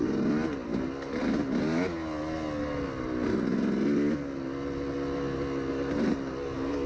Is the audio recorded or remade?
recorded